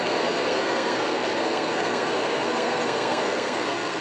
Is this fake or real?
fake